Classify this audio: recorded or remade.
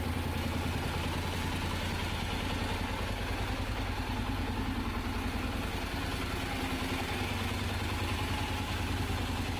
recorded